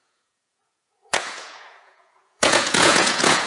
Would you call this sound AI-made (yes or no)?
yes